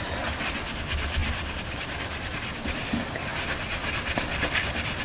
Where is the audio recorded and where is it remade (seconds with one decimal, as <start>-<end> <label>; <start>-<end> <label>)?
0.0-1.2 recorded; 1.2-2.8 remade; 2.8-3.3 recorded; 3.3-5.0 remade

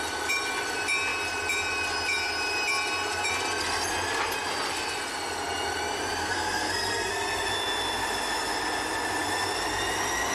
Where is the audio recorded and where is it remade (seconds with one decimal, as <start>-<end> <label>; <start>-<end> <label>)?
0.0-6.2 recorded; 6.2-7.5 remade; 7.5-10.3 recorded

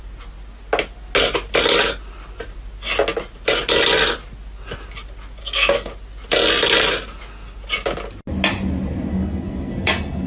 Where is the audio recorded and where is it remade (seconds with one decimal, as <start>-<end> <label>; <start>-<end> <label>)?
0.0-5.4 recorded; 5.4-5.9 remade; 5.9-9.1 recorded; 9.1-10.3 remade

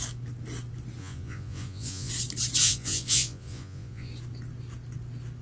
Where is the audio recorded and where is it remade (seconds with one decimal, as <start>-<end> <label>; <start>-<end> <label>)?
0.0-1.0 recorded; 1.0-2.1 remade; 2.1-2.6 recorded; 2.6-4.1 remade; 4.1-5.4 recorded

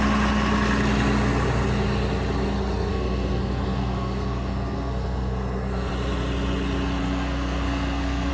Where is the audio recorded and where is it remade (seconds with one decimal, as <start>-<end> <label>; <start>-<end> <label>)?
0.0-2.9 recorded; 2.9-5.9 remade; 5.9-7.0 recorded; 7.0-8.3 remade